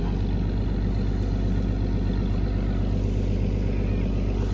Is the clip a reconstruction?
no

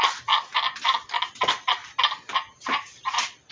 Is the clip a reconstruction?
no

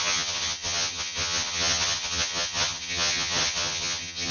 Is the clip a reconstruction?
yes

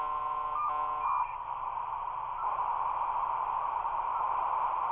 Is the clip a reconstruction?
no